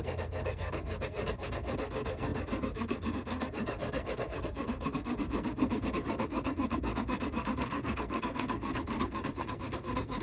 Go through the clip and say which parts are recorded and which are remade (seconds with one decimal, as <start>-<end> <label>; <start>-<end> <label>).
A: 0.0-10.2 remade